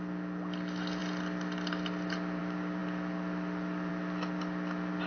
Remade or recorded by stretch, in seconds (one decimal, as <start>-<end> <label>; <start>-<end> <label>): 0.0-5.1 recorded